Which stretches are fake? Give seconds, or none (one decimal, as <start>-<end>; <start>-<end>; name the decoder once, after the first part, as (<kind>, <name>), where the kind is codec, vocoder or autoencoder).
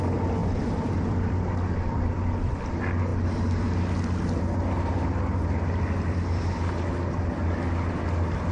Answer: 0.4-2.7 (vocoder, BigVGAN v2)